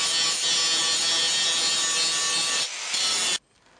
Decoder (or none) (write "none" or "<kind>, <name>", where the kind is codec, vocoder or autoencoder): none